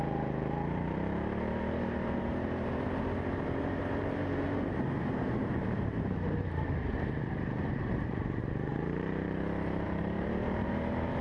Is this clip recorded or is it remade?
remade